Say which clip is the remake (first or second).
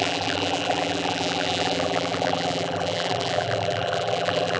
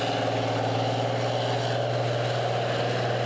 first